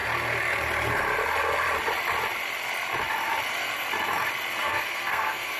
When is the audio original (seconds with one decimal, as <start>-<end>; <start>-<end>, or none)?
0.0-4.6